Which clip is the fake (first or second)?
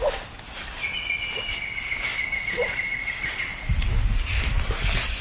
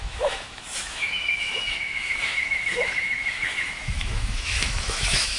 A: second